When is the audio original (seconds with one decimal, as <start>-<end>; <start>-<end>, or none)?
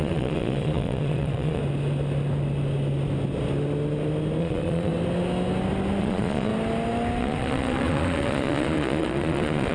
1.6-4.4; 4.9-6.0; 6.5-7.2